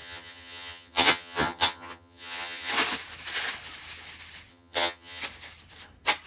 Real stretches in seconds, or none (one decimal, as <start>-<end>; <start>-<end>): 2.7-4.5; 5.2-6.3